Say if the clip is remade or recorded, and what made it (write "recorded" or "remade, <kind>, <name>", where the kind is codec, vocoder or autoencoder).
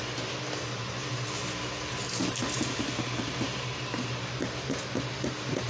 recorded